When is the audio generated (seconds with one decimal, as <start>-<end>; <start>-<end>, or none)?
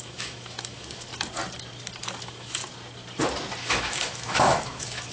0.0-1.1; 2.2-2.6; 3.6-5.1